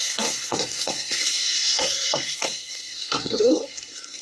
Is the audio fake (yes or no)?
yes